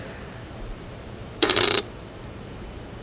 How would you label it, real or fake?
fake